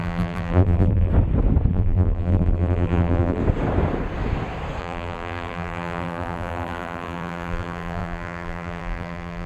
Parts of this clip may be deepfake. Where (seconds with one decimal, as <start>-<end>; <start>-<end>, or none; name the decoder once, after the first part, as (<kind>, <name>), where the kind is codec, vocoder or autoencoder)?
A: 0.0-1.1 (vocoder, BigVGAN v2); 1.7-3.4; 4.8-9.5